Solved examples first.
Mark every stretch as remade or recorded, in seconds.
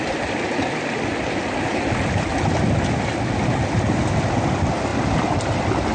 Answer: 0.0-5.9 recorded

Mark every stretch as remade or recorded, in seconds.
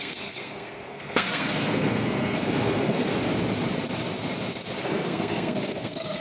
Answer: 0.0-3.1 remade; 3.1-4.8 recorded; 4.8-6.2 remade